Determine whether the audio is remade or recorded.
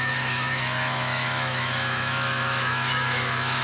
remade